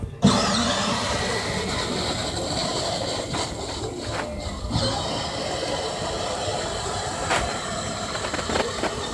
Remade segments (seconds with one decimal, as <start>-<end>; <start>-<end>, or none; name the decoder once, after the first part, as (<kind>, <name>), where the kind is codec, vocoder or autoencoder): none